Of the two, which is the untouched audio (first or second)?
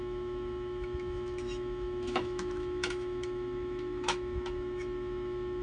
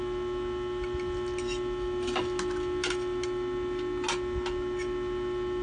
second